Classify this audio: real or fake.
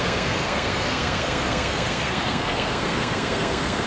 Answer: fake